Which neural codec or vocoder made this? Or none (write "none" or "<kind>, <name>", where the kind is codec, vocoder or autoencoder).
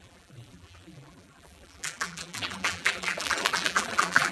vocoder, BigVGAN v2